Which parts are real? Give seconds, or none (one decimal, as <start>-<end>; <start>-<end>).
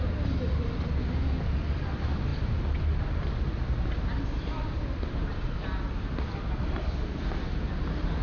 0.0-8.2